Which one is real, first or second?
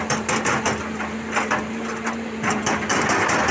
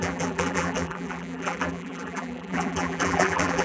first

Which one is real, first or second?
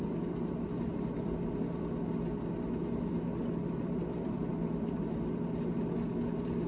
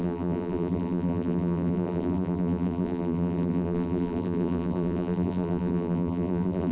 first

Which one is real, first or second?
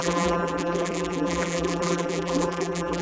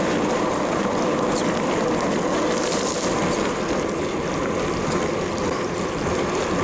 second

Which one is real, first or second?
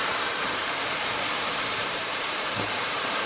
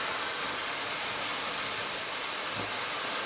second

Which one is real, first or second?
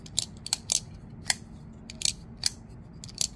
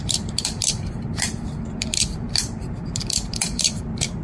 first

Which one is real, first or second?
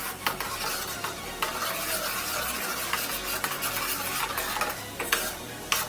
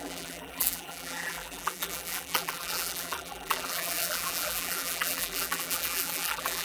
first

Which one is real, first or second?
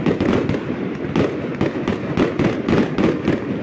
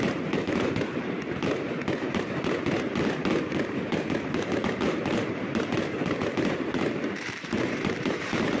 first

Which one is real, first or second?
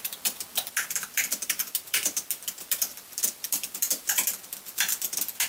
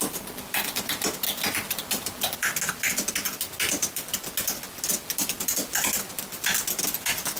second